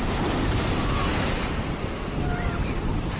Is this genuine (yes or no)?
yes